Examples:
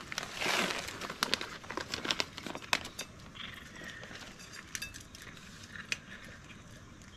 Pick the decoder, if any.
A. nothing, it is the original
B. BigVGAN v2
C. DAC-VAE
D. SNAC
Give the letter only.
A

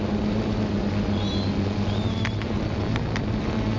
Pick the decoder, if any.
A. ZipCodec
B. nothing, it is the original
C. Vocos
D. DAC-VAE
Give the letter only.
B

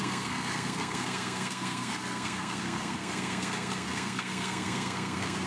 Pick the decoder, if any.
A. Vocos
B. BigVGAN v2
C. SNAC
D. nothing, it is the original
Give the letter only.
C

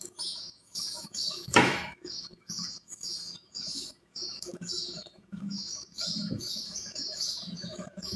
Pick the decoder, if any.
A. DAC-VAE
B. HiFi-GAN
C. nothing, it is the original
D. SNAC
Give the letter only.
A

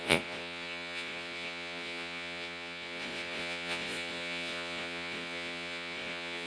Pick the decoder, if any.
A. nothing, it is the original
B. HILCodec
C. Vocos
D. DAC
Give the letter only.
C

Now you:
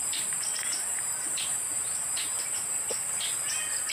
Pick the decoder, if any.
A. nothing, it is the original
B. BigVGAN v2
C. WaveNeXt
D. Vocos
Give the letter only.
B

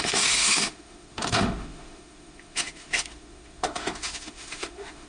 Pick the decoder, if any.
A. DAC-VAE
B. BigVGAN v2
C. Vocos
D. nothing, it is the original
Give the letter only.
A